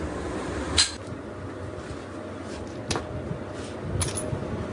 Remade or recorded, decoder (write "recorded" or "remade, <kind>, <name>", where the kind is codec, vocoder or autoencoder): recorded